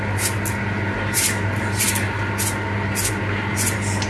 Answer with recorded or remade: recorded